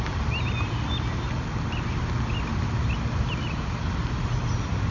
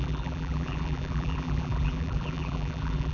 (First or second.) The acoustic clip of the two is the first